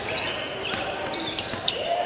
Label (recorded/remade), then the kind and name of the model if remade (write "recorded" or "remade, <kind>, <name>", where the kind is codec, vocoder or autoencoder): remade, vocoder, BigVGAN v2